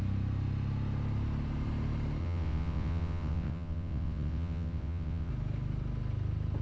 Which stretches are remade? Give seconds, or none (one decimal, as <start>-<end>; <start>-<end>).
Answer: 2.2-5.3